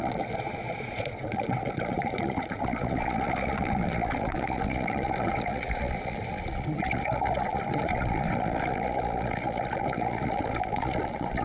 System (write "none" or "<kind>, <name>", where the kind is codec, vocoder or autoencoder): vocoder, Vocos